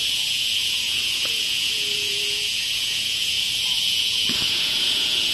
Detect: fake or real fake